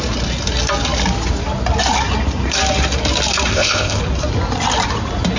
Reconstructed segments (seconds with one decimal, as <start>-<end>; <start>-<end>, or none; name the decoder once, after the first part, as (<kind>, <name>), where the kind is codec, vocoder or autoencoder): 3.5-4.0 (codec, ZipCodec)